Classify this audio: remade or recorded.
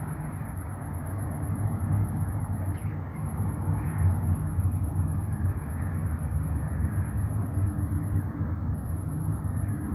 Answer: remade